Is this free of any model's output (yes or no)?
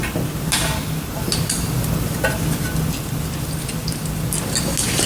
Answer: yes